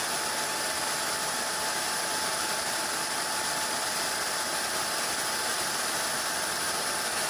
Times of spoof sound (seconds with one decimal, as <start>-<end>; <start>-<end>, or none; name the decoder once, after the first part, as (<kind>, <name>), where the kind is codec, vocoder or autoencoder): none